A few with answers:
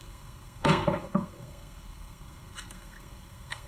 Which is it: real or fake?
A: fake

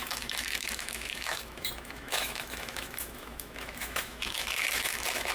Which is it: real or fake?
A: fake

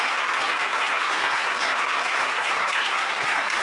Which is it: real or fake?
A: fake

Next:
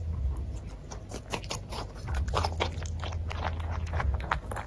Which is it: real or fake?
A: real